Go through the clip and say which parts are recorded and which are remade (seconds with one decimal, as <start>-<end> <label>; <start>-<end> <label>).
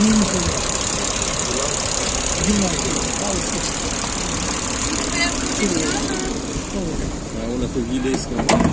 0.0-8.7 recorded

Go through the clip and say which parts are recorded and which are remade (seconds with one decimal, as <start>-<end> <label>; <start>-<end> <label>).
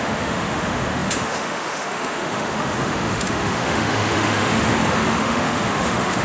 0.0-4.7 remade; 4.7-5.2 recorded; 5.2-6.2 remade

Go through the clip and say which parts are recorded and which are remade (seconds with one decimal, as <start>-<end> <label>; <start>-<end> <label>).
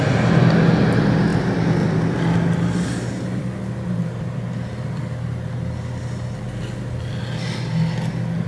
0.0-8.5 recorded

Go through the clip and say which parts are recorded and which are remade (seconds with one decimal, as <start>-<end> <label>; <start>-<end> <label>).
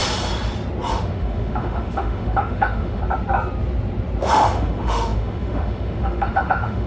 0.0-0.9 recorded; 0.9-3.0 remade; 3.0-4.2 recorded; 4.2-6.9 remade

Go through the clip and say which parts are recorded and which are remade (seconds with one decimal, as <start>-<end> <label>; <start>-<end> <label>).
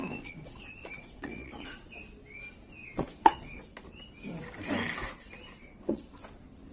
0.0-2.0 remade; 2.0-2.8 recorded; 2.8-3.6 remade; 3.6-5.6 recorded; 5.6-6.1 remade; 6.1-6.7 recorded